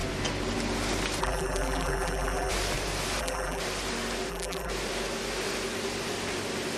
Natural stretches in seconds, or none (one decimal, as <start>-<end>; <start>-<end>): 0.0-1.2; 2.5-3.2; 3.6-4.3; 4.7-6.8